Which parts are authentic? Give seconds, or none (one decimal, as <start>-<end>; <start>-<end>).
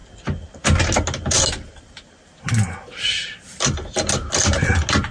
0.0-5.1